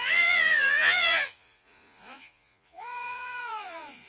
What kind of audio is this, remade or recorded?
remade